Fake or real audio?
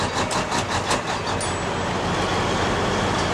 real